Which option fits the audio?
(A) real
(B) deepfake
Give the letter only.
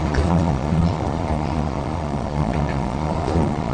B